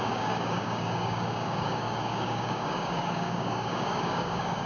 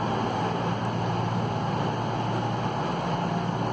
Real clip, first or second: second